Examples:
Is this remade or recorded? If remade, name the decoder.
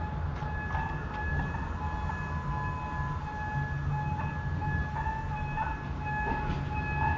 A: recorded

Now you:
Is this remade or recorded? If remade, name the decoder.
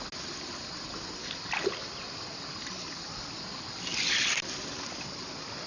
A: recorded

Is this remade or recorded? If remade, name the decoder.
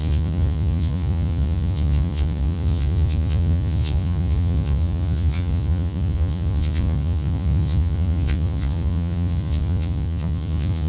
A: remade, vocoder, Vocos